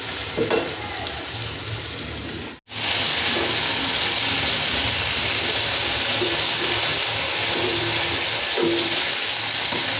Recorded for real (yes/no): yes